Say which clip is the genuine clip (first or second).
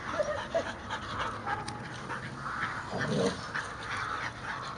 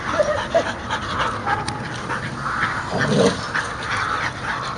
first